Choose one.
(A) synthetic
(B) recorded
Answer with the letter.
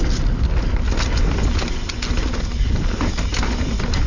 B